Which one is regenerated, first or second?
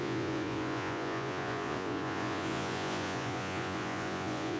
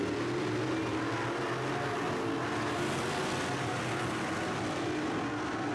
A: first